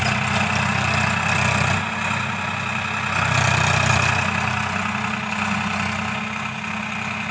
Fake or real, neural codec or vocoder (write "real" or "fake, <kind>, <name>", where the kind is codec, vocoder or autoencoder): real